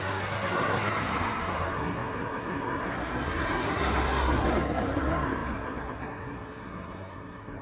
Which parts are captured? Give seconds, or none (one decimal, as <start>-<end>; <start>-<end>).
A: none